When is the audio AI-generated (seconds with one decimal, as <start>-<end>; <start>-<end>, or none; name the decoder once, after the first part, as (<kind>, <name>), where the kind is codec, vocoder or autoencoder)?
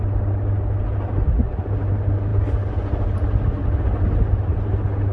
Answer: none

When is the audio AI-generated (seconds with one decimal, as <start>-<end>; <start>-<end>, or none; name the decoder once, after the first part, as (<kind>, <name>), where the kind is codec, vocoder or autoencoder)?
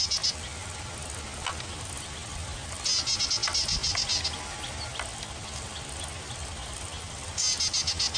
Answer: none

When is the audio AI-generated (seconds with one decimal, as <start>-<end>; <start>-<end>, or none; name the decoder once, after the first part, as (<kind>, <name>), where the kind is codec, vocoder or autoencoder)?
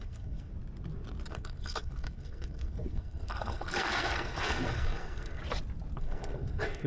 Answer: 0.0-0.5 (codec, SNAC); 1.3-5.4; 6.0-6.9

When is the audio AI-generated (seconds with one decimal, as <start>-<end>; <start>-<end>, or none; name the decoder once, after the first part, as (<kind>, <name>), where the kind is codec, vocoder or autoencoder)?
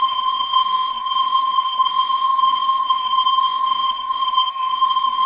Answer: 0.0-5.3 (codec, SNAC)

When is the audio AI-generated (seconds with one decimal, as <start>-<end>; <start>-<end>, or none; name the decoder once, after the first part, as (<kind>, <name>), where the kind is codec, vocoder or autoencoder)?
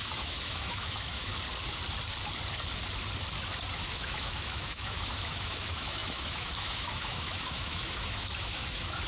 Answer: 0.0-1.3 (autoencoder, DAC-VAE); 3.7-9.1